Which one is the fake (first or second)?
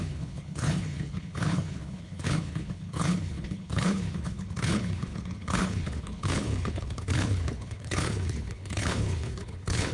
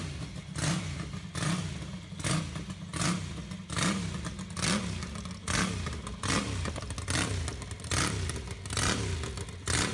first